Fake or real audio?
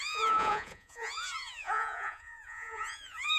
fake